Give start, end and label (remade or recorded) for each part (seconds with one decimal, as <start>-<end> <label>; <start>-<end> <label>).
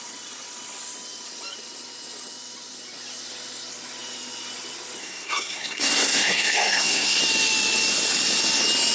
0.0-5.0 recorded; 5.0-7.2 remade; 7.2-8.9 recorded